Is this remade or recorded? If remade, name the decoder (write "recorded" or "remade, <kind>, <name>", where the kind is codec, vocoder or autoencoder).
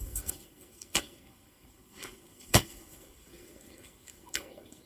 remade, codec, SNAC